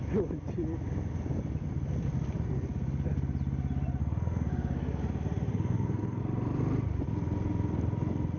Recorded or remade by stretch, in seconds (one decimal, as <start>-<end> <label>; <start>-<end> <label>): 0.0-4.0 recorded; 4.0-5.0 remade; 5.0-5.5 recorded; 5.5-6.2 remade; 6.2-8.4 recorded